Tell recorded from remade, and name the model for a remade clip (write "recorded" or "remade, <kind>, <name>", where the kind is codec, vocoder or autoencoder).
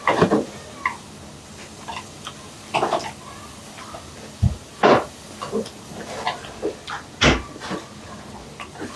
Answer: recorded